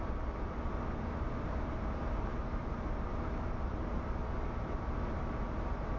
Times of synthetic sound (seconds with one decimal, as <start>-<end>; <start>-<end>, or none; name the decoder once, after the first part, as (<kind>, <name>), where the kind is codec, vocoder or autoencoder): none